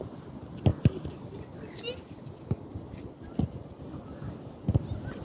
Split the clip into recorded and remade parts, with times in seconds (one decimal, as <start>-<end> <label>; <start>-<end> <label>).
0.0-5.2 recorded

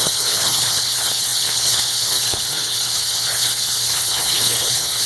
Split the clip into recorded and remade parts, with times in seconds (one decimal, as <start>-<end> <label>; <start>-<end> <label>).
0.0-5.1 remade

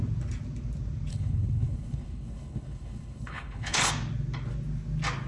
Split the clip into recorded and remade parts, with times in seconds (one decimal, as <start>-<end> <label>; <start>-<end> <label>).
0.0-1.1 recorded; 1.1-3.9 remade; 3.9-5.3 recorded

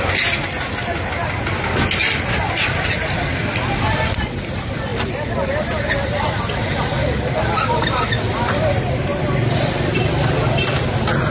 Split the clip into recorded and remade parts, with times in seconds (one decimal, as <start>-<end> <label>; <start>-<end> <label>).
0.0-11.3 recorded

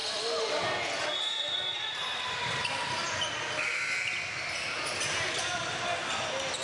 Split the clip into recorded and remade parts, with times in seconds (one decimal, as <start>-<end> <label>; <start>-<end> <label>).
0.0-6.6 recorded

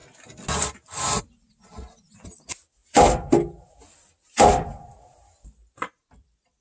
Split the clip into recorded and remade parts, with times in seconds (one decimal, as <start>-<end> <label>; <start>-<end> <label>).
0.0-6.6 recorded